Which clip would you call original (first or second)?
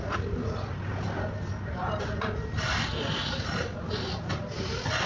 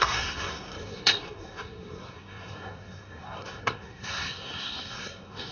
first